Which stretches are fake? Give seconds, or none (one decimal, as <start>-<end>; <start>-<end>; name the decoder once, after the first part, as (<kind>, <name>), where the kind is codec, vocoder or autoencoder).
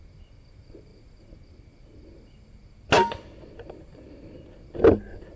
none